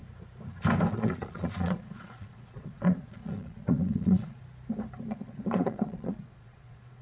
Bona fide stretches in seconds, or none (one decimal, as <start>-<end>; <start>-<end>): 0.0-0.9; 4.4-5.1